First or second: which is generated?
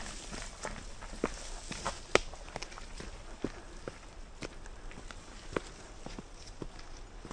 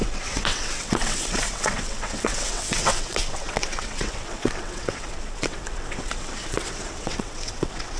second